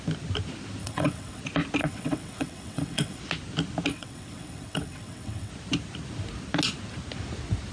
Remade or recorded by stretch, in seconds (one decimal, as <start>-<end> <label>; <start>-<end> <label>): 0.0-0.8 recorded; 0.8-1.4 remade; 1.4-1.8 recorded; 1.8-3.2 remade; 3.2-3.9 recorded; 3.9-5.5 remade; 5.5-7.7 recorded